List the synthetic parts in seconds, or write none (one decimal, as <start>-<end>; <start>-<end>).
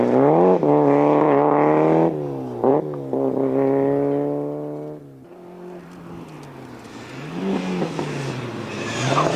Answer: none